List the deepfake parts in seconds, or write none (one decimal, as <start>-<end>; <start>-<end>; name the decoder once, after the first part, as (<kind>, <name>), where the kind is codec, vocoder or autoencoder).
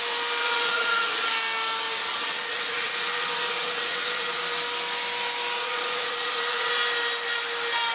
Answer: 0.4-1.3 (vocoder, WaveNeXt); 2.0-4.4; 5.6-6.7